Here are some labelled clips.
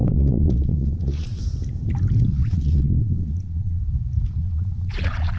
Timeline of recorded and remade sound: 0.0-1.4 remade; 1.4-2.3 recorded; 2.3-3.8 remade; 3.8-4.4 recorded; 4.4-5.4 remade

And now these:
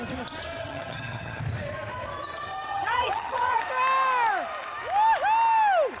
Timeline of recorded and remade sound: 0.0-0.6 recorded; 0.6-1.4 remade; 1.4-2.7 recorded; 2.7-3.6 remade; 3.6-6.0 recorded

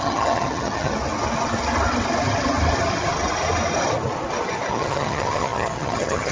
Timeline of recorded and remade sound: 0.0-0.9 remade; 0.9-4.7 recorded; 4.7-6.3 remade

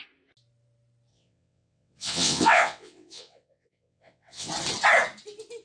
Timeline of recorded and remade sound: 0.0-1.1 recorded; 1.1-4.5 remade; 4.5-5.6 recorded